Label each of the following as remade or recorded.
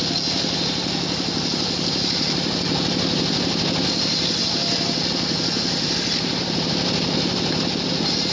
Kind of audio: recorded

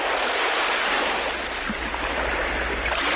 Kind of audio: recorded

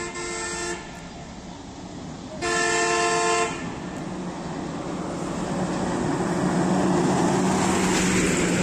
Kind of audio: recorded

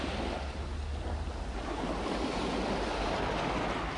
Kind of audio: recorded